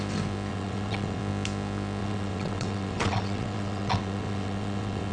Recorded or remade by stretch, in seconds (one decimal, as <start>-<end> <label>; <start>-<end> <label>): 0.0-0.5 recorded; 0.5-1.2 remade; 1.2-2.0 recorded; 2.0-5.1 remade